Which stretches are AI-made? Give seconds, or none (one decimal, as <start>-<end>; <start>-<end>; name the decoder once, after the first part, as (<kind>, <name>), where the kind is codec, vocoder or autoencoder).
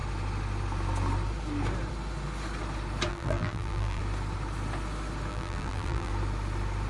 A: 3.1-4.0 (vocoder, BigVGAN v2); 5.3-6.1